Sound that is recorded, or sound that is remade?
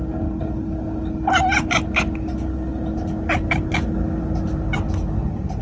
recorded